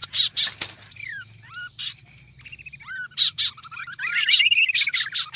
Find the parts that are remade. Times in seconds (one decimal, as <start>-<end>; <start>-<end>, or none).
0.0-2.0; 2.8-4.3